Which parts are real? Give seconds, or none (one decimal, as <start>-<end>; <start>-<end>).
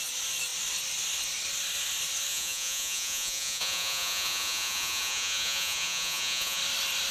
0.0-2.3; 6.6-7.1